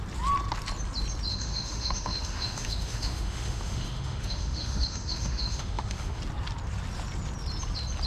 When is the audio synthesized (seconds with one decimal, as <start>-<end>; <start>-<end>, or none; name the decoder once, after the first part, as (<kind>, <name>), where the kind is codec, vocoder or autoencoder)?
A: 1.3-6.2 (autoencoder, DAC-VAE)